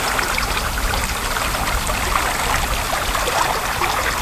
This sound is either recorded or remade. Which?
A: recorded